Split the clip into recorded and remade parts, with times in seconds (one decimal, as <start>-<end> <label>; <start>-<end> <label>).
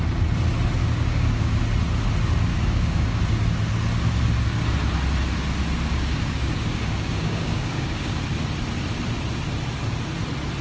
0.0-0.8 recorded; 0.8-1.6 remade; 1.6-2.5 recorded; 2.5-3.2 remade; 3.2-5.9 recorded; 5.9-8.2 remade; 8.2-10.6 recorded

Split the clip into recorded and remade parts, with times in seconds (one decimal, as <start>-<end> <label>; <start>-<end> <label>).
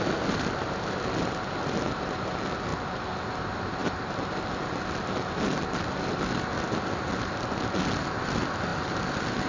0.0-9.5 recorded